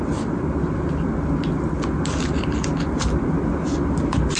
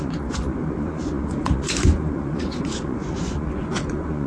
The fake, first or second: second